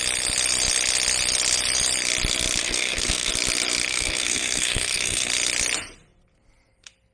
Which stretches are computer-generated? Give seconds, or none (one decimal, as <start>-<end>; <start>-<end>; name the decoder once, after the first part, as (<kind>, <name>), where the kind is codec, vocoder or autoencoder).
2.6-3.3 (codec, SNAC); 3.9-5.3